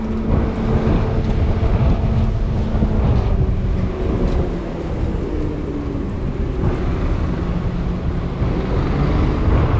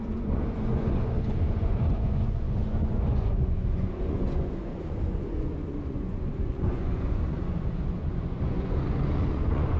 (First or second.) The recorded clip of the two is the first